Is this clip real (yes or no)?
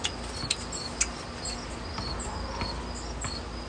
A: yes